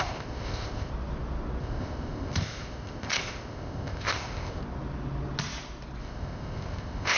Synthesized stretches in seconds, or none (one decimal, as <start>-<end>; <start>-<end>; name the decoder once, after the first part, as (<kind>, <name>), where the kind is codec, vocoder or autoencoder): 0.0-0.9 (codec, ZipCodec); 1.6-4.6; 6.0-7.2